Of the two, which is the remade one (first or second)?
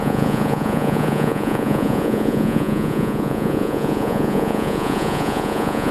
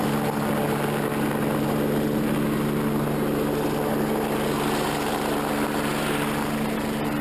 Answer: first